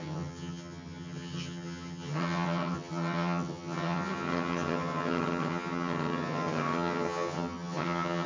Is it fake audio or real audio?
fake